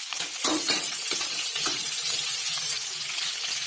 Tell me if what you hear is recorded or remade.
remade